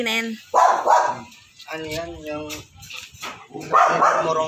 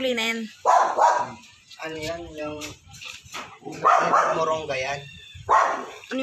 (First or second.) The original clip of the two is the first